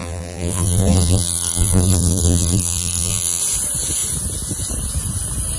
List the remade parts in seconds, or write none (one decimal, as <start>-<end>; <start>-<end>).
0.0-3.4